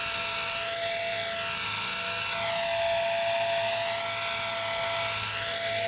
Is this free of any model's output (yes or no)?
yes